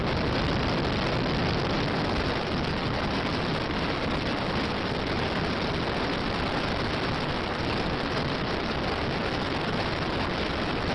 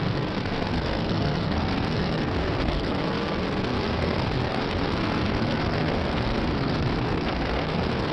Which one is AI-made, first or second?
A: second